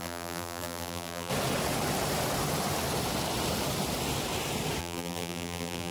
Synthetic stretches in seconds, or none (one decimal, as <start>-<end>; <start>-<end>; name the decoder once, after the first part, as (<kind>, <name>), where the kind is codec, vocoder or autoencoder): 0.0-1.3 (vocoder, BigVGAN v2); 4.8-5.9